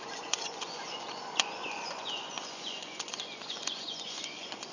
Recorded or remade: remade